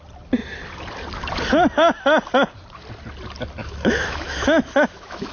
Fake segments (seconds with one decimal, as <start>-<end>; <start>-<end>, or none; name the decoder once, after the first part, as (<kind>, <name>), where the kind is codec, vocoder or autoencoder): 3.6-5.3 (autoencoder, DAC-VAE)